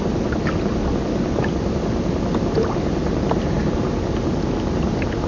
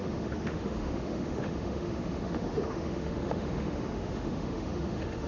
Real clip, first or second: first